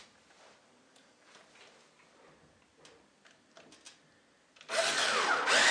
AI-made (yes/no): no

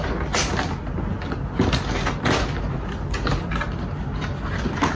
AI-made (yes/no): no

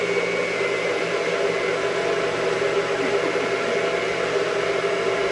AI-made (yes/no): no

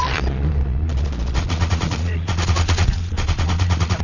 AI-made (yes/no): yes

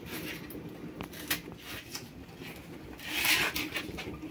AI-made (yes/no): no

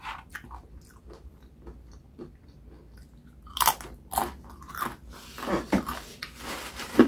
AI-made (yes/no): no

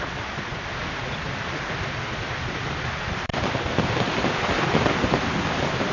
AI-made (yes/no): no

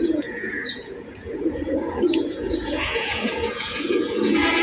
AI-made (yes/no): yes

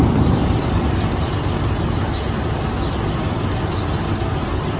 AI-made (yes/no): yes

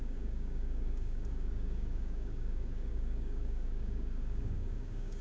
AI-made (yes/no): yes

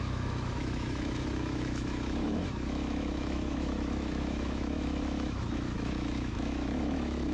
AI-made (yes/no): yes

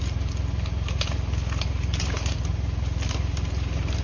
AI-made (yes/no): no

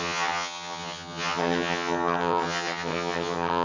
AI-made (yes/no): yes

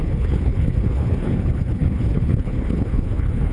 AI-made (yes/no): yes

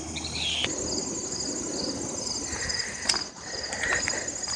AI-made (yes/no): no